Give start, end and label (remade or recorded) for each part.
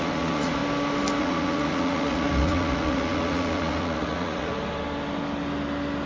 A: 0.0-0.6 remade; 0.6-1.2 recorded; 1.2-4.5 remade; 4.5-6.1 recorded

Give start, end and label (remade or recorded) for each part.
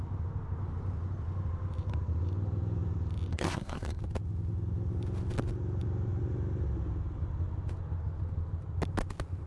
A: 0.0-3.3 recorded; 3.3-4.0 remade; 4.0-9.5 recorded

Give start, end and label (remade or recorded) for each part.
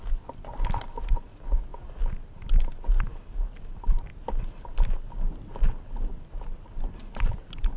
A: 0.0-7.8 recorded